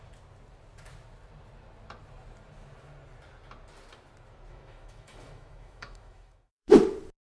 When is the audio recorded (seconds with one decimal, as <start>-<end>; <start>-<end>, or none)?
0.0-4.5; 6.7-7.3